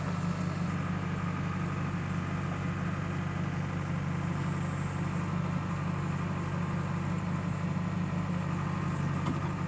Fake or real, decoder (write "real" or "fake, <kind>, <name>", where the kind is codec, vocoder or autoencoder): real